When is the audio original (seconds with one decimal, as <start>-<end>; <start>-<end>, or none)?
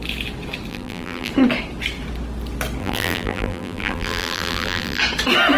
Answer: 0.0-0.7; 1.3-2.8; 5.0-5.6